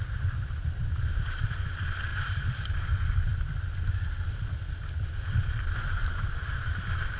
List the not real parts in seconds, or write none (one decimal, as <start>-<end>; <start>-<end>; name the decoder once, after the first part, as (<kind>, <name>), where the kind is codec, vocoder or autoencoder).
2.1-2.7 (vocoder, BigVGAN v2)